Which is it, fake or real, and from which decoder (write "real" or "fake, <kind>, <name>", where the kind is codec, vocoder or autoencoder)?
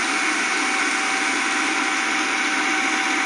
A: real